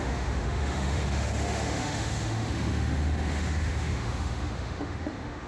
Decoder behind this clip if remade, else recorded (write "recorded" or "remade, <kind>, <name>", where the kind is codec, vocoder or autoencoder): remade, autoencoder, DAC-VAE